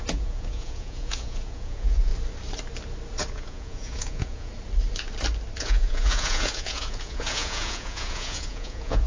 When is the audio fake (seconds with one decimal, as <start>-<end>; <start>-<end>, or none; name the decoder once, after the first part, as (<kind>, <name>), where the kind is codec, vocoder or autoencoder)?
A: 0.0-2.1 (vocoder, Vocos); 3.3-4.5; 5.6-9.1